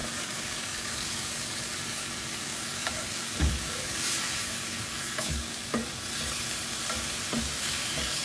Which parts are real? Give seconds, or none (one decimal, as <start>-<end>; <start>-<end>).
5.8-7.6